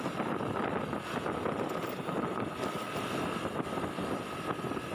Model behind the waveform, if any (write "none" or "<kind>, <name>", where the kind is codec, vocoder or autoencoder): none